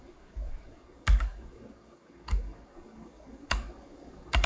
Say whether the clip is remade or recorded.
remade